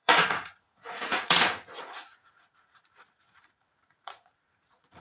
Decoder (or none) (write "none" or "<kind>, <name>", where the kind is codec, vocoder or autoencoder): vocoder, Vocos